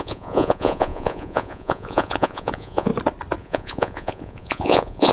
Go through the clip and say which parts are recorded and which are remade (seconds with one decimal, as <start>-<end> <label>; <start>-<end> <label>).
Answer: 0.0-2.9 remade; 2.9-3.4 recorded; 3.4-5.1 remade

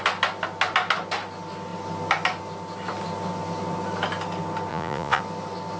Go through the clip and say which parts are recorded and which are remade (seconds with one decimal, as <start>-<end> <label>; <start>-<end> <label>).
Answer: 0.0-4.7 recorded; 4.7-5.2 remade; 5.2-5.8 recorded

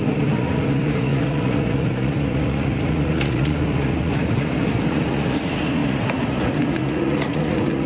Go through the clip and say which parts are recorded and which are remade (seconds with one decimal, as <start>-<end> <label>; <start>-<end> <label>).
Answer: 0.0-7.9 remade

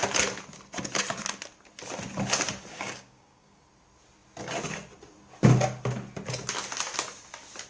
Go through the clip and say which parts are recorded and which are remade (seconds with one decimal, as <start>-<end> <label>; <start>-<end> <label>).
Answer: 0.0-2.7 recorded; 2.7-3.6 remade; 3.6-7.7 recorded

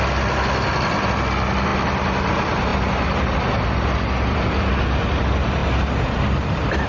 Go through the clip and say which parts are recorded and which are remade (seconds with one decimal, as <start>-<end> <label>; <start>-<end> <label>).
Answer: 0.0-6.9 recorded

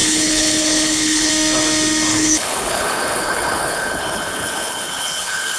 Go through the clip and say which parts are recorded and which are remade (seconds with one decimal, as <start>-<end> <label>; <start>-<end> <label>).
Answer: 0.0-1.3 remade; 1.3-2.1 recorded; 2.1-5.6 remade

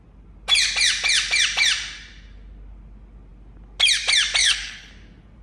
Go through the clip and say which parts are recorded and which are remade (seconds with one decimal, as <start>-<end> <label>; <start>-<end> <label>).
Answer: 0.0-4.4 recorded; 4.4-4.9 remade; 4.9-5.4 recorded

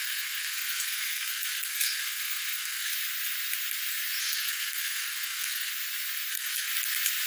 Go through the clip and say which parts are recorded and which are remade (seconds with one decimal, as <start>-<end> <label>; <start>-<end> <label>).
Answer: 0.0-2.9 remade; 2.9-4.2 recorded; 4.2-5.7 remade; 5.7-6.3 recorded; 6.3-6.7 remade; 6.7-7.3 recorded